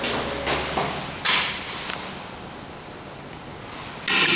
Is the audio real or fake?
real